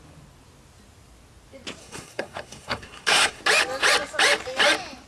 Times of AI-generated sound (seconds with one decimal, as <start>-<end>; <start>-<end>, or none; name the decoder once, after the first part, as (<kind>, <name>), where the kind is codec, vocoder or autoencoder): 1.8-3.4 (codec, SNAC)